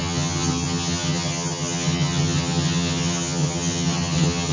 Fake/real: fake